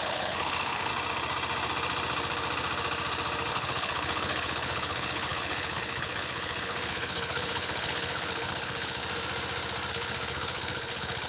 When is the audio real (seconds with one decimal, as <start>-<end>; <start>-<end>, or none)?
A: 0.9-3.5; 9.0-9.9